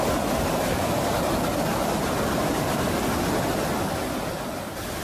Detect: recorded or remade recorded